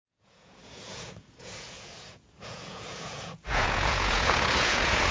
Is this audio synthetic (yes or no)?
yes